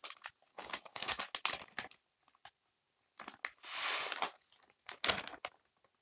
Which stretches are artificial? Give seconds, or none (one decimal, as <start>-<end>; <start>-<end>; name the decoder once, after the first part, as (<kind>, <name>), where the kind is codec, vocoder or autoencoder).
0.5-1.2 (codec, DAC)